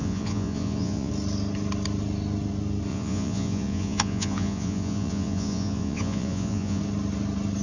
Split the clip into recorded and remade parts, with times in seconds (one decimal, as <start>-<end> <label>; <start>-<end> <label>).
0.0-1.1 remade; 1.1-2.9 recorded; 2.9-6.8 remade; 6.8-7.6 recorded

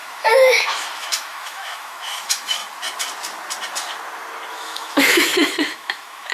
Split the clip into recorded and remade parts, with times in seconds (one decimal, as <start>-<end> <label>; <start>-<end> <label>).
0.0-2.6 remade; 2.6-4.5 recorded; 4.5-6.3 remade

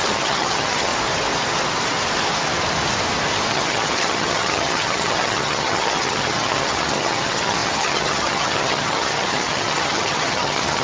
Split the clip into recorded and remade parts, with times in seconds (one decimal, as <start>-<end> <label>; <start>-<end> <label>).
0.0-0.9 remade; 0.9-3.5 recorded; 3.5-10.8 remade

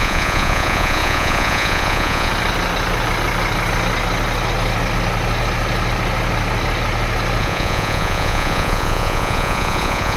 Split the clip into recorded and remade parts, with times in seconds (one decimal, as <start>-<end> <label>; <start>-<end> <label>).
0.0-2.3 remade; 2.3-7.4 recorded; 7.4-10.2 remade

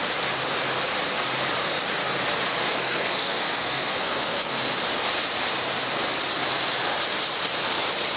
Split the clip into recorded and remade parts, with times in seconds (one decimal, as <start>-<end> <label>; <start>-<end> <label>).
0.0-2.6 recorded; 2.6-4.5 remade; 4.5-8.2 recorded